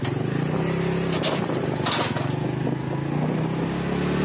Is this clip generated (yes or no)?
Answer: no